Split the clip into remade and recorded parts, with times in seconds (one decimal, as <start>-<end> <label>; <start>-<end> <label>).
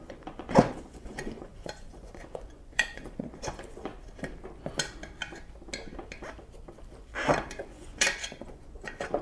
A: 0.0-3.9 remade; 3.9-7.7 recorded; 7.7-9.2 remade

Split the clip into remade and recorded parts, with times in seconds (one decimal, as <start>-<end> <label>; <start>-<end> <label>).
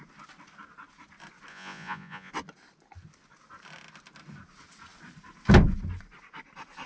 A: 0.0-1.5 recorded; 1.5-2.3 remade; 2.3-6.9 recorded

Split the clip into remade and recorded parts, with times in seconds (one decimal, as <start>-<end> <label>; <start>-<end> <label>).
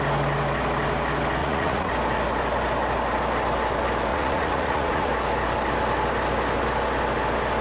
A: 0.0-1.4 recorded; 1.4-1.9 remade; 1.9-4.1 recorded; 4.1-5.1 remade; 5.1-7.6 recorded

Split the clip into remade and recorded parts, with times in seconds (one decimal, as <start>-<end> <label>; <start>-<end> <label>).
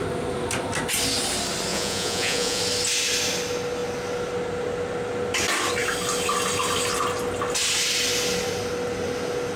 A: 0.0-1.7 recorded; 1.7-2.6 remade; 2.6-9.6 recorded